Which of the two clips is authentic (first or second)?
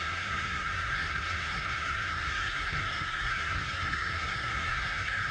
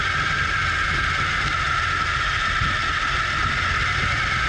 second